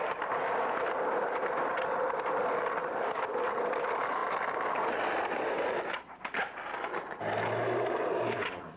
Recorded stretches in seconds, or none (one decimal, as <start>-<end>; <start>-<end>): 0.0-8.8

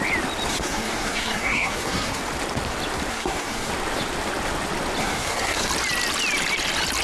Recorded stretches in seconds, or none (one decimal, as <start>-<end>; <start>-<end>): 0.0-0.5; 2.2-3.1; 3.7-5.0; 5.7-7.0